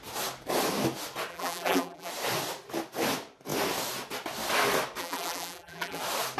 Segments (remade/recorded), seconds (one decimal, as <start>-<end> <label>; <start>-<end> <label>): 0.0-1.3 recorded; 1.3-2.1 remade; 2.1-5.0 recorded; 5.0-6.0 remade; 6.0-6.4 recorded